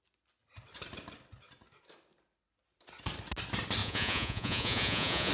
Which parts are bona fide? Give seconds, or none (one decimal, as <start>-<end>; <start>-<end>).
0.0-3.8